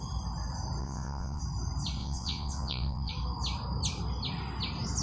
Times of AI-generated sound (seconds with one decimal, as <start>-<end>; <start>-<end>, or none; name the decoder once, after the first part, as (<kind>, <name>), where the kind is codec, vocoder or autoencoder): 0.8-1.4 (vocoder, WaveNeXt); 2.0-3.1